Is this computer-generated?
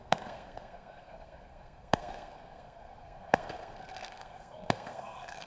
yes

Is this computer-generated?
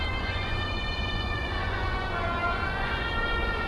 yes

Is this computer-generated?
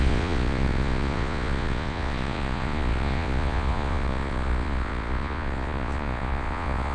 yes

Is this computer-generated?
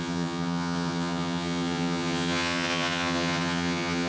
yes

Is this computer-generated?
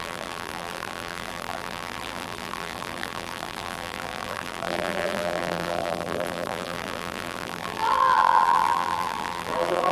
yes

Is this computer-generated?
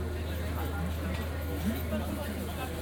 no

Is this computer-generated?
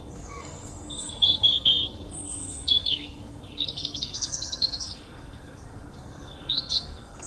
yes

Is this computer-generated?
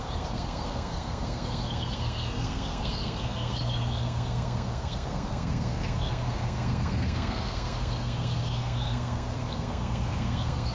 yes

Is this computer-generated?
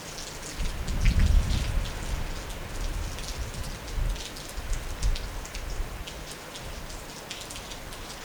no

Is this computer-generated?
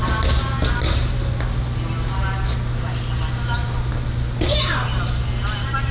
no